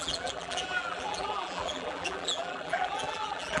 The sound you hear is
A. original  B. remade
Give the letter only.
B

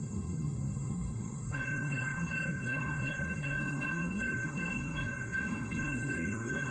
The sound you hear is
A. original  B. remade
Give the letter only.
B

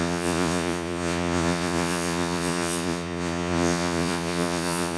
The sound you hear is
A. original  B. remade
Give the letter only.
B